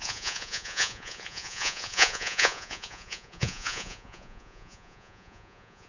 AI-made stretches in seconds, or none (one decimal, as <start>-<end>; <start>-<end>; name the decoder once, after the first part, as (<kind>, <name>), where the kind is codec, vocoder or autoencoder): 0.0-5.9 (vocoder, Vocos)